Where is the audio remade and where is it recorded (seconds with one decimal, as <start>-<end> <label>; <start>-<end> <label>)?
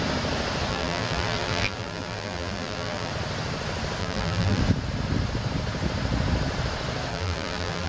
0.0-0.7 recorded; 0.7-3.1 remade; 3.1-4.0 recorded; 4.0-4.6 remade; 4.6-7.1 recorded; 7.1-7.9 remade